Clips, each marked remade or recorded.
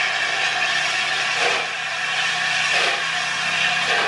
recorded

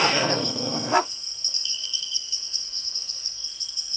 remade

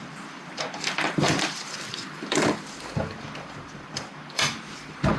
remade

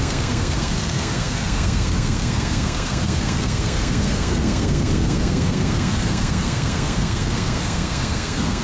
remade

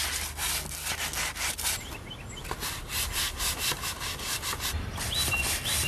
recorded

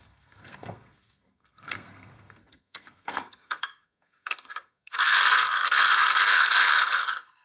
remade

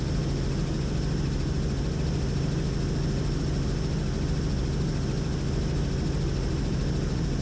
recorded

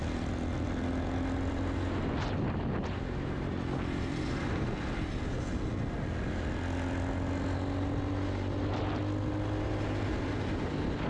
recorded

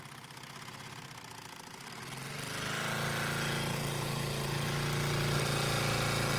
recorded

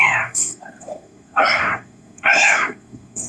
remade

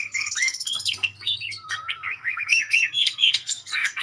remade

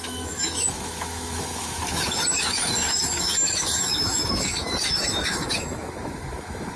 remade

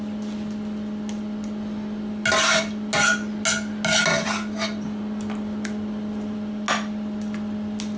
recorded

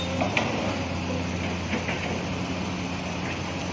recorded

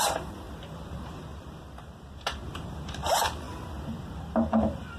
remade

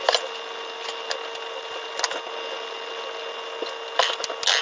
recorded